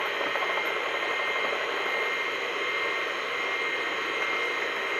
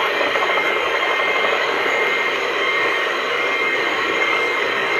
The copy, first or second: second